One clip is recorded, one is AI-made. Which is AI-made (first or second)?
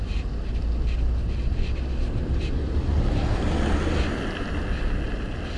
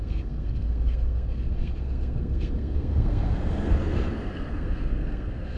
second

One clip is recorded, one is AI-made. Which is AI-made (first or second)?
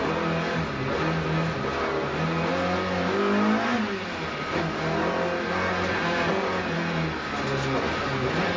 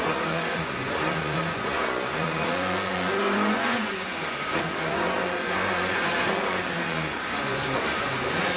second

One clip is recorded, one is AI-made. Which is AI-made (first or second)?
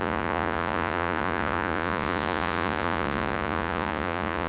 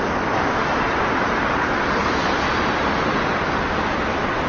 first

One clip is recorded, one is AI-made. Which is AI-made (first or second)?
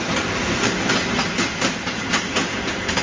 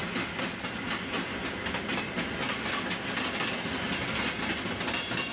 first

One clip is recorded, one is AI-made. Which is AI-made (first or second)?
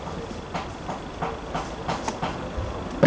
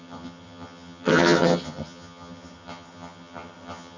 second